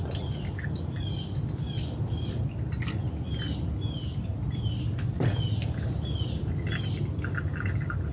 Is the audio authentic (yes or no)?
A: yes